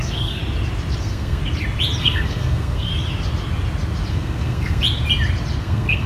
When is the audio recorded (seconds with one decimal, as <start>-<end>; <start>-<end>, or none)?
0.4-1.0; 1.4-2.0; 2.9-4.1; 4.8-5.6